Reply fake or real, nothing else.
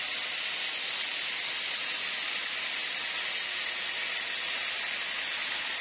real